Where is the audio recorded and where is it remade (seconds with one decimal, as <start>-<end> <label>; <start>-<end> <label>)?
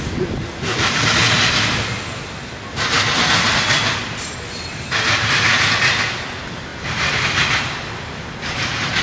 0.0-9.0 recorded